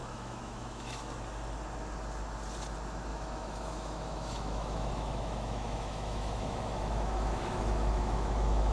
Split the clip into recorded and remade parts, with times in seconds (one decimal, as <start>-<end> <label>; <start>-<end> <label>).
0.0-1.1 remade; 1.1-3.1 recorded; 3.1-8.7 remade

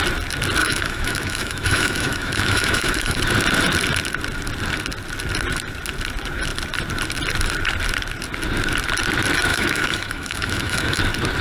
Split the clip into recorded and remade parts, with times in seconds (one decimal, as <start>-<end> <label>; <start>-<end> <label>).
0.0-0.6 recorded; 0.6-3.2 remade; 3.2-9.5 recorded; 9.5-11.0 remade; 11.0-11.4 recorded

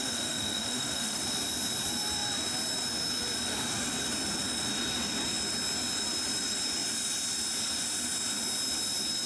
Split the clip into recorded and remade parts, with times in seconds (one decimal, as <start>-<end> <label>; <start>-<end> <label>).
0.0-1.2 remade; 1.2-9.3 recorded